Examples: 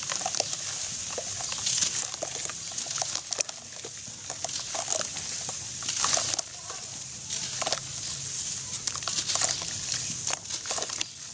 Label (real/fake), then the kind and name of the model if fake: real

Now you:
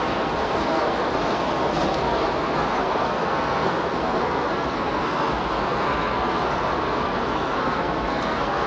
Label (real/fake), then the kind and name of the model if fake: fake, codec, SNAC